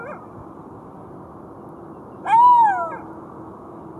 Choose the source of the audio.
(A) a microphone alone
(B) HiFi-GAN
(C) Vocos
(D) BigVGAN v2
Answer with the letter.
A